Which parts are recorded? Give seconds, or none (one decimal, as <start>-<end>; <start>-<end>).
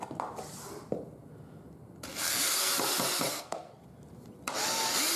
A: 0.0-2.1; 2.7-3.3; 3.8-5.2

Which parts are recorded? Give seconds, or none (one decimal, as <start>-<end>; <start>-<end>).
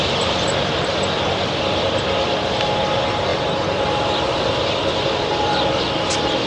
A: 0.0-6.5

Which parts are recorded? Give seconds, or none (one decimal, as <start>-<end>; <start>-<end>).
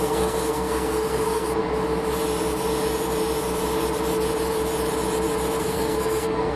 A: 1.6-5.6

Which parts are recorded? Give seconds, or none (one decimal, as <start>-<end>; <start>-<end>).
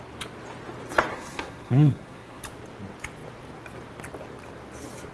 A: 0.0-1.1; 2.4-5.1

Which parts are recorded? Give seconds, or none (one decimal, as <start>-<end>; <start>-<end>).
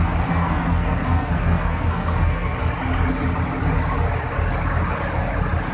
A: 2.6-5.7